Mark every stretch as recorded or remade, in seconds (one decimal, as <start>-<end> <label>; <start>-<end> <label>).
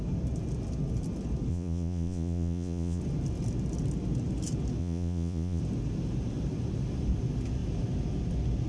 0.0-1.5 recorded; 1.5-3.0 remade; 3.0-4.8 recorded; 4.8-5.6 remade; 5.6-8.7 recorded